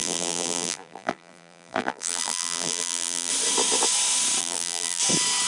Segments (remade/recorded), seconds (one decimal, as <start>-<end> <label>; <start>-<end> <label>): 0.0-3.3 remade; 3.3-4.4 recorded; 4.4-5.0 remade; 5.0-5.5 recorded